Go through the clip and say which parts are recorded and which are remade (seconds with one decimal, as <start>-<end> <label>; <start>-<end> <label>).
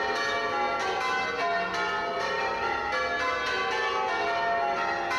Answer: 0.0-2.1 recorded; 2.1-2.8 remade; 2.8-5.2 recorded